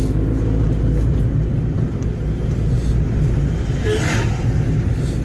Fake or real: real